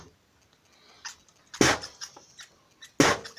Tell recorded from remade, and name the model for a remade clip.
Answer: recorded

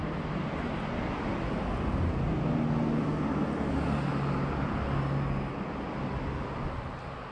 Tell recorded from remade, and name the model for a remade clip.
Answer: recorded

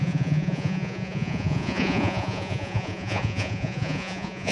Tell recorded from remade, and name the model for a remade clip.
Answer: remade, vocoder, Vocos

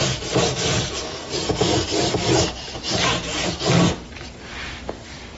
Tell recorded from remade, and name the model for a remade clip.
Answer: remade, vocoder, BigVGAN v2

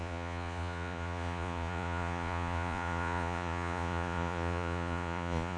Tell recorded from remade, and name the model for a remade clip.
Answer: remade, vocoder, Vocos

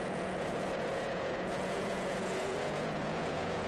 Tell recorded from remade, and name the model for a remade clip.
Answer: remade, vocoder, Vocos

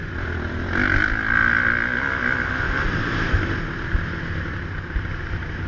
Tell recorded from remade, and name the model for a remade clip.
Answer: recorded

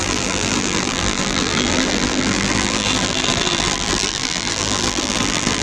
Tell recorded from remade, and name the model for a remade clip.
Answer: remade, vocoder, BigVGAN v2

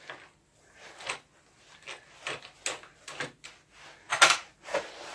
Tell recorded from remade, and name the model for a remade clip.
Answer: recorded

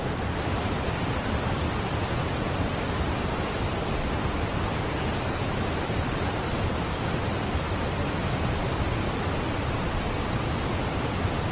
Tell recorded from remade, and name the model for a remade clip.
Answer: recorded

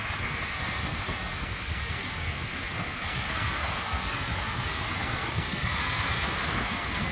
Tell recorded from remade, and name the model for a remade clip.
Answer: remade, codec, SNAC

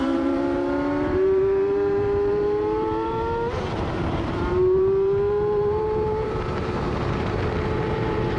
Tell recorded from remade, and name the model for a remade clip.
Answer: remade, vocoder, BigVGAN v2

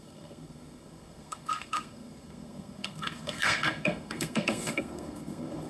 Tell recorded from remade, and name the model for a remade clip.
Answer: remade, codec, SNAC